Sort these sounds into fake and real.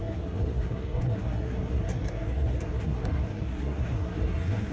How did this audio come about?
fake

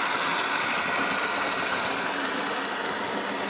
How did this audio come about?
real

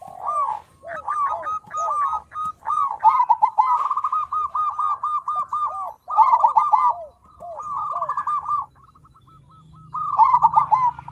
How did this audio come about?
real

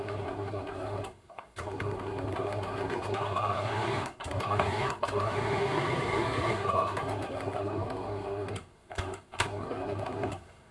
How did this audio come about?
fake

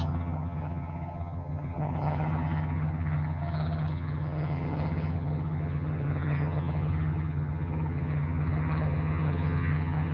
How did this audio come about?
fake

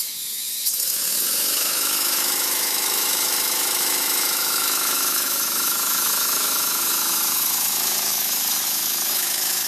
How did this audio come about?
fake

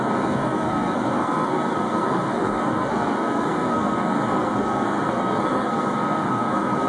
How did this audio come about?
fake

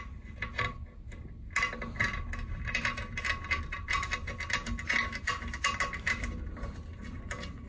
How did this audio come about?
real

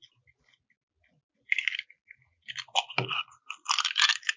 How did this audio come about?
real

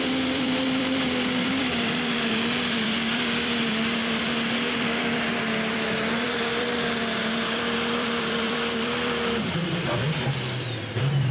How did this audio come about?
fake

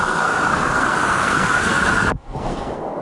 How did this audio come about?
fake